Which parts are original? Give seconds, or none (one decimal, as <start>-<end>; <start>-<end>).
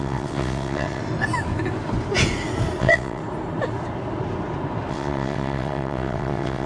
1.0-2.8; 3.2-4.9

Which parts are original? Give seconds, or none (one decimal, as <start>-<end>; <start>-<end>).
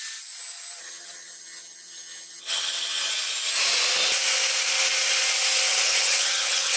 0.0-0.8; 3.1-5.7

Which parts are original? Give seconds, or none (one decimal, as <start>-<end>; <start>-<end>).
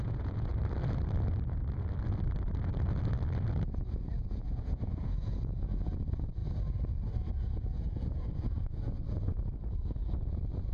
0.5-4.3; 6.4-7.3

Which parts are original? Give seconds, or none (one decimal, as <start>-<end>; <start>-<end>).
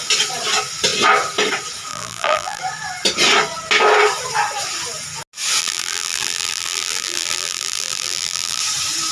0.0-1.9; 2.6-5.6; 8.6-9.1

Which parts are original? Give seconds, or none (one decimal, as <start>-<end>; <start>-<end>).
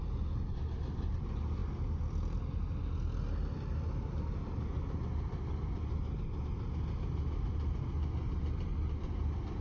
0.0-9.6